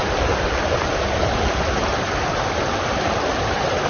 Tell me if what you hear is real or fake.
fake